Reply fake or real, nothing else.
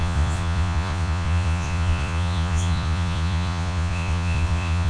fake